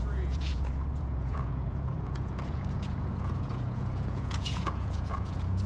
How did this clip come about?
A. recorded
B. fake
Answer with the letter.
B